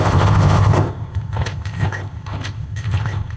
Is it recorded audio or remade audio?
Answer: remade